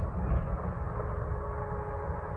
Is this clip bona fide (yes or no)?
yes